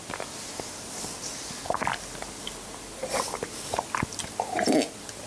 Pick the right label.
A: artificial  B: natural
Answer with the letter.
B